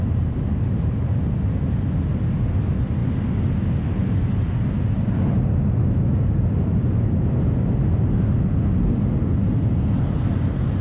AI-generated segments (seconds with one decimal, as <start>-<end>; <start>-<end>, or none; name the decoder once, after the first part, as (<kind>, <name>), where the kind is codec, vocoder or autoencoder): none